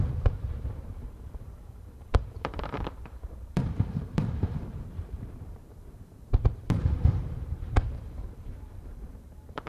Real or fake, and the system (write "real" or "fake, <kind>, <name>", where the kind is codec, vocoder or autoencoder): fake, vocoder, BigVGAN v2